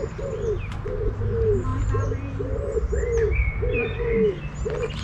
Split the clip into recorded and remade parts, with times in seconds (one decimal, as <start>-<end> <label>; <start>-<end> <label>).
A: 0.0-5.0 recorded